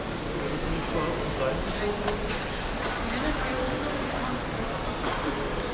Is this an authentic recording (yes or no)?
yes